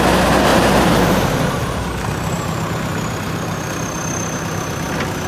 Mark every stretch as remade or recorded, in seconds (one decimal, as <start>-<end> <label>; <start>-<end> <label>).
0.0-0.5 recorded; 0.5-3.7 remade; 3.7-5.3 recorded